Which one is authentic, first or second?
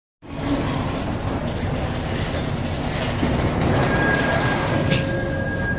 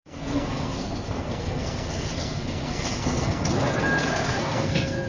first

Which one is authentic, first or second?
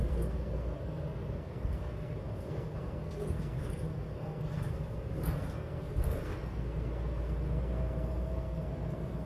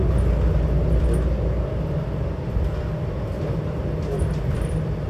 second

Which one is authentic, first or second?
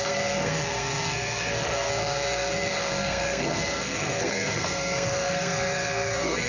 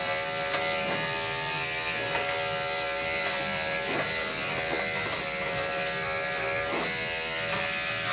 second